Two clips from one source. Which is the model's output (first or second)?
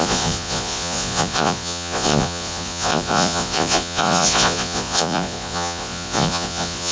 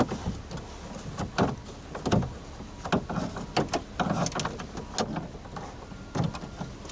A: first